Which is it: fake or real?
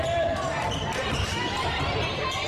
fake